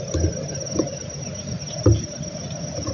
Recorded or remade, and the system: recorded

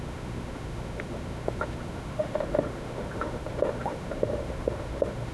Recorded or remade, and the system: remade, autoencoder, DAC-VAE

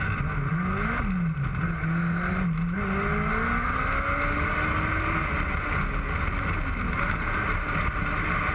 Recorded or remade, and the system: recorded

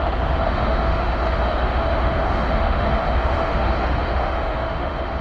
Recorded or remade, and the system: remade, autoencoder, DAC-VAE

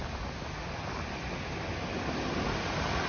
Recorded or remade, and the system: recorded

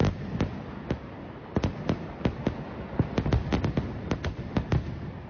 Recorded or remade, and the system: recorded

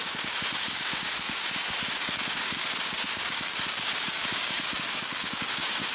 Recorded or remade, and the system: remade, codec, DAC